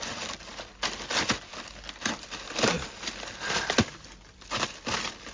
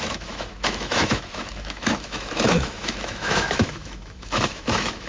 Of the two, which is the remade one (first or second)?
second